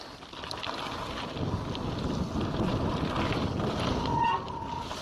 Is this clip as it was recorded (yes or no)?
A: yes